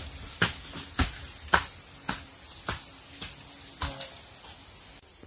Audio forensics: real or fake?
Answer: real